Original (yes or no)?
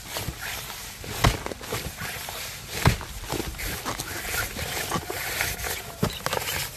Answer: yes